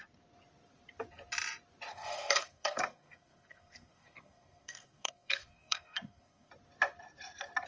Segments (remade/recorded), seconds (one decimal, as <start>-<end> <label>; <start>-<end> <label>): 0.0-1.9 recorded; 1.9-6.5 remade; 6.5-7.7 recorded